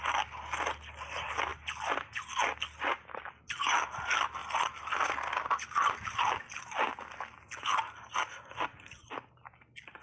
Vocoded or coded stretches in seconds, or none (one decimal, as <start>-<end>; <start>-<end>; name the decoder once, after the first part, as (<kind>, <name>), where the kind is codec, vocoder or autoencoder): none